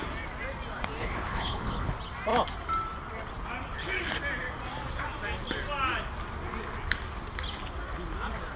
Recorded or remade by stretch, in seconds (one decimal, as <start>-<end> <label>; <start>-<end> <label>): 0.0-1.0 recorded; 1.0-1.9 remade; 1.9-8.6 recorded